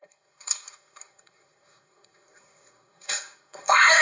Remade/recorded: remade